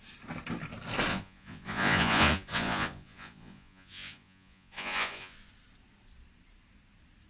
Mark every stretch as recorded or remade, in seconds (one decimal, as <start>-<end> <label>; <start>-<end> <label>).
0.0-1.1 recorded; 1.1-5.5 remade; 5.5-7.3 recorded